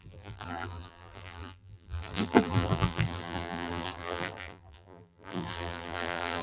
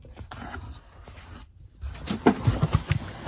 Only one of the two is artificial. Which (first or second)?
first